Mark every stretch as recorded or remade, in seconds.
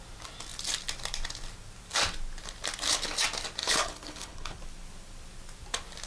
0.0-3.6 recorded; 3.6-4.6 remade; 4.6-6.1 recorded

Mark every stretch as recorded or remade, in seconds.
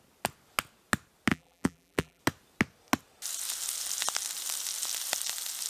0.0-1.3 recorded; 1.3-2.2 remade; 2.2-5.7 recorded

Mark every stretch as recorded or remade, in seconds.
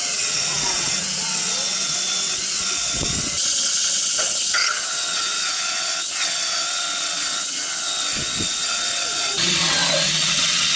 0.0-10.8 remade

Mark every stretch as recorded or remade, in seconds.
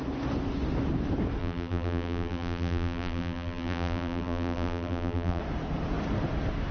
0.0-1.4 recorded; 1.4-5.4 remade; 5.4-6.7 recorded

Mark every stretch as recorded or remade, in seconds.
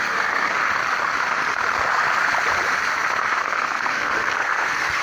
0.0-0.6 remade; 0.6-3.4 recorded; 3.4-5.0 remade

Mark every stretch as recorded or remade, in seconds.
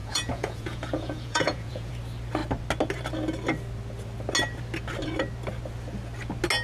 0.0-1.9 remade; 1.9-6.6 recorded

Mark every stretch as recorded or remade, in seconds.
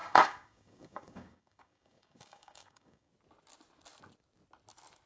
0.0-3.1 remade; 3.1-5.1 recorded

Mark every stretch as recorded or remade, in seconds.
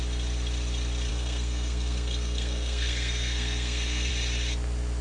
0.0-1.1 recorded; 1.1-4.1 remade; 4.1-5.0 recorded